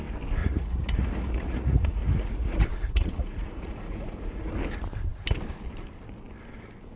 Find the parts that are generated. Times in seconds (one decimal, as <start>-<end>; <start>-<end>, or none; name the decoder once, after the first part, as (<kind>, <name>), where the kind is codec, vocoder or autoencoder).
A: 0.4-4.5 (vocoder, Vocos)